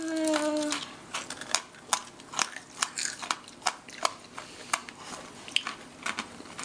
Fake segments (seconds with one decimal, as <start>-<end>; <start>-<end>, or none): none